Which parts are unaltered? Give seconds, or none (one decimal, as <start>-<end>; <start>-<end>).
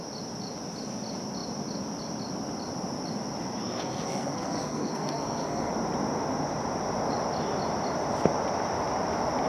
0.0-3.6; 5.7-9.5